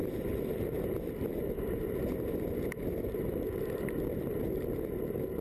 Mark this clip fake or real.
real